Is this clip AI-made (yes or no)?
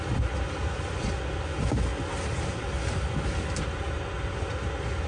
no